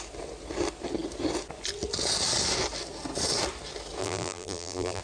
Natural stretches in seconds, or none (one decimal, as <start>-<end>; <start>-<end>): 0.0-4.0